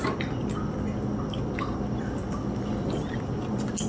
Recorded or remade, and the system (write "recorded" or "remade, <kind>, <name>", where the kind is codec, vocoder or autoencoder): recorded